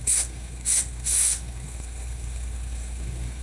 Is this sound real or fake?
fake